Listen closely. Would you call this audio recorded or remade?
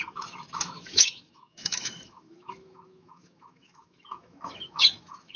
remade